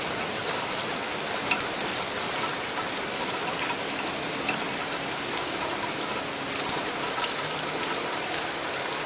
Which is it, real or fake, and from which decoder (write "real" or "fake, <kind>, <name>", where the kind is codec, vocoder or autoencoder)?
real